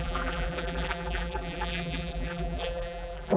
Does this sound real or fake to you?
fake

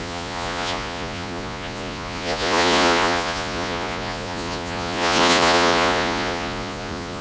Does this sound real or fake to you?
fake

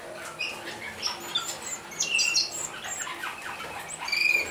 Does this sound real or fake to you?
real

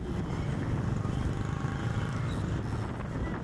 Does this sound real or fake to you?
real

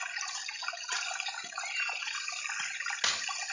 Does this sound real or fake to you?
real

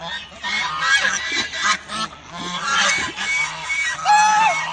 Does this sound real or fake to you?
real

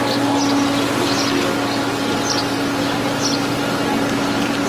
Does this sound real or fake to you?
real